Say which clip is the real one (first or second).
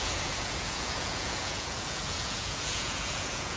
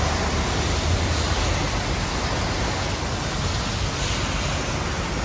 second